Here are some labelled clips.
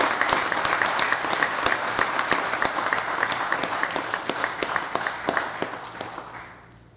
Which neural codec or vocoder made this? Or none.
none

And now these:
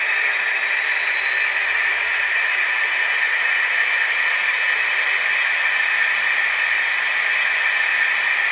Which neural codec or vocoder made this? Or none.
none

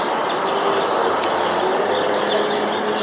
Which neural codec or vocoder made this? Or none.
none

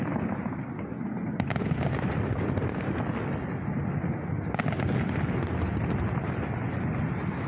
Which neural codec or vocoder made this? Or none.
none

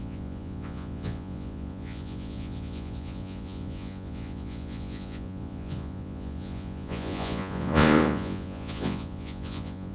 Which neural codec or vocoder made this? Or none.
vocoder, Vocos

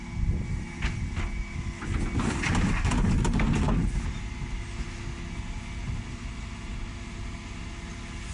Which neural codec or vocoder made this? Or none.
none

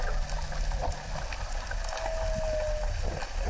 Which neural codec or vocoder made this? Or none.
none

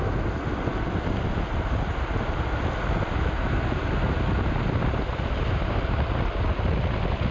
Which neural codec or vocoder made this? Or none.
none